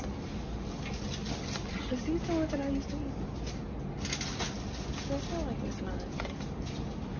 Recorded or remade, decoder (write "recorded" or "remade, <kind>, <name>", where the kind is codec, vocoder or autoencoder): recorded